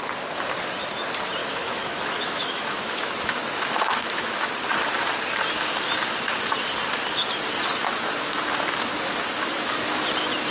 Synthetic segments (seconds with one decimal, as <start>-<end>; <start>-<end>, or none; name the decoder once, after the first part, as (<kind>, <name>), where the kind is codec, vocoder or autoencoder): 1.4-4.5 (autoencoder, DAC-VAE)